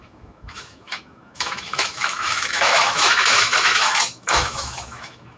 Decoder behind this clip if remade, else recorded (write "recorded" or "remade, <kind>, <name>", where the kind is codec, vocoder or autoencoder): remade, autoencoder, DAC-VAE